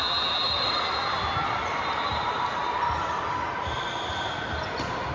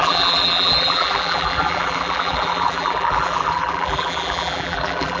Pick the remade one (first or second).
second